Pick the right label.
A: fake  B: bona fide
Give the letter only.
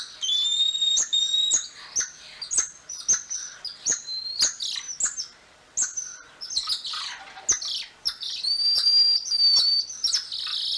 B